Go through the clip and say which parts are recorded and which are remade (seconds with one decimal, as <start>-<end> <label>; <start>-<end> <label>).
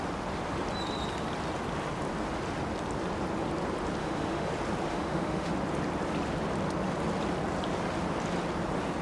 0.0-4.0 recorded; 4.0-4.5 remade; 4.5-4.9 recorded; 4.9-5.5 remade; 5.5-9.0 recorded